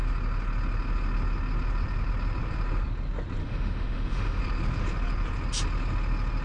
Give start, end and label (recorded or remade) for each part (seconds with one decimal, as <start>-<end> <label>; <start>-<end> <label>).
0.0-3.4 recorded; 3.4-4.4 remade; 4.4-6.4 recorded